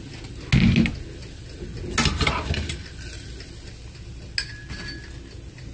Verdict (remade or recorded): recorded